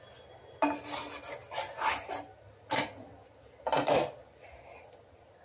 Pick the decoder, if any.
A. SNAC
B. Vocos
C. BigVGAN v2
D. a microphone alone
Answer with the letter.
D